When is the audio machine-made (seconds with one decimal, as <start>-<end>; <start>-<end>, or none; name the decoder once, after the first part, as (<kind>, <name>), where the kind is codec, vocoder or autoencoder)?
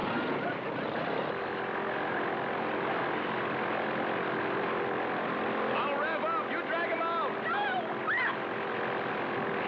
none